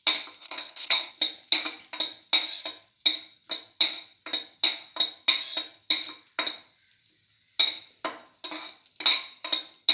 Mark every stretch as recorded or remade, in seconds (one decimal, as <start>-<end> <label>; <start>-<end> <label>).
0.0-0.4 recorded; 0.4-1.1 remade; 1.1-9.9 recorded